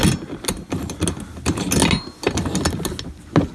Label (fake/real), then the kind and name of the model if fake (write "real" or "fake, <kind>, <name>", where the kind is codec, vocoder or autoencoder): real